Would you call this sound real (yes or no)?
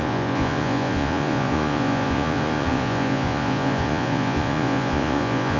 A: no